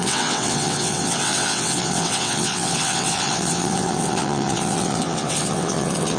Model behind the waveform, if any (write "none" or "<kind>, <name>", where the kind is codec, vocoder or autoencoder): vocoder, WaveNeXt